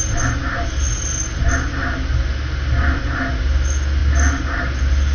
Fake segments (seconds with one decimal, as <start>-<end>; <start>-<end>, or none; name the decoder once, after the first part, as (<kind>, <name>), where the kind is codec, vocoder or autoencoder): none